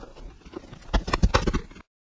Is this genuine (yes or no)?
yes